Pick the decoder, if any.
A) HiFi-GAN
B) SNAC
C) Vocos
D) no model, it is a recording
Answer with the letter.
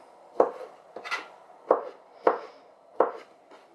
D